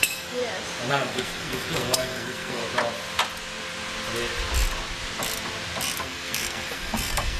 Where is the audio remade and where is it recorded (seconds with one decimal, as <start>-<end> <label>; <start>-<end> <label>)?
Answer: 0.0-0.4 remade; 0.4-0.9 recorded; 0.9-2.6 remade; 2.6-6.0 recorded; 6.0-7.4 remade